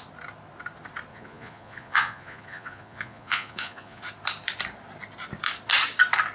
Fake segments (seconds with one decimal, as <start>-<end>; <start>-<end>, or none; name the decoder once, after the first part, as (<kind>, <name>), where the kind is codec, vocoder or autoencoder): 1.1-4.0 (vocoder, Vocos)